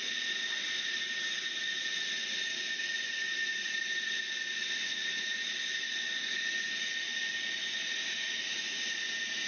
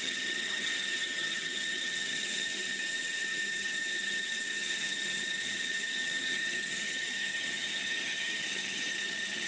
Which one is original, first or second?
first